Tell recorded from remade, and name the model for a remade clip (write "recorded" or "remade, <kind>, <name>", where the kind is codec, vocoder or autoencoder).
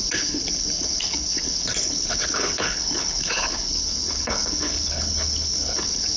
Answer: remade, codec, HILCodec